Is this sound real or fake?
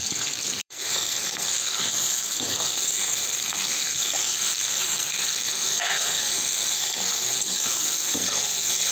fake